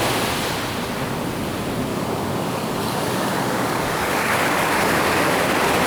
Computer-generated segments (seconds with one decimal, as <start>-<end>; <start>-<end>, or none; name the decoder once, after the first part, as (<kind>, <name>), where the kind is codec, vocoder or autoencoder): 1.9-5.4 (codec, DAC)